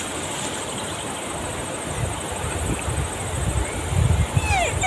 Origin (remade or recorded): recorded